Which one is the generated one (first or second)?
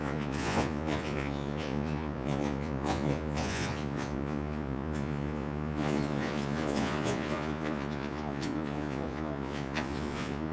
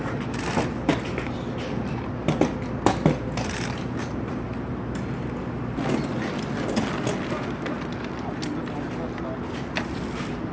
first